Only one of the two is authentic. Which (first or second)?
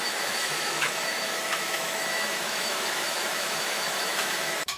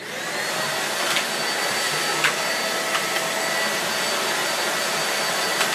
second